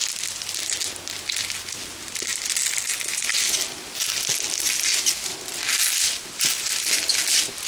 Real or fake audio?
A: real